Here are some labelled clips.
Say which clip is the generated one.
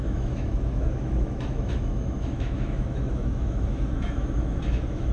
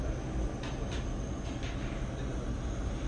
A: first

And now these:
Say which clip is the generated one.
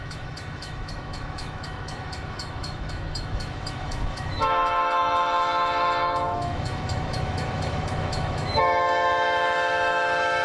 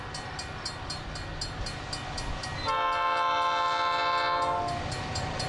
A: first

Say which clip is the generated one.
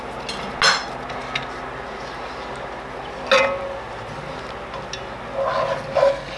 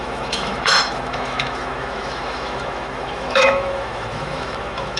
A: second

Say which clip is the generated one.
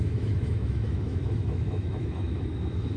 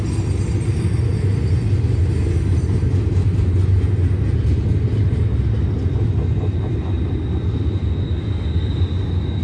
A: first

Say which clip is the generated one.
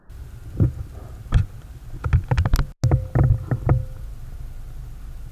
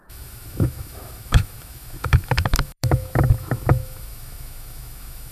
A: second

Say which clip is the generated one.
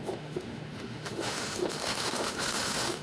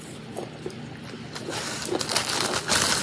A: first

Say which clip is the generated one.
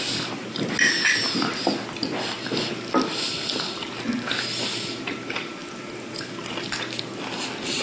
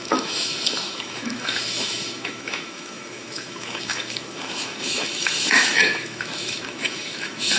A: second